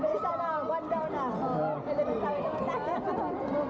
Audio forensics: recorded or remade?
recorded